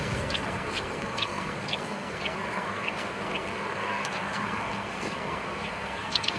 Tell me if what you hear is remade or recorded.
remade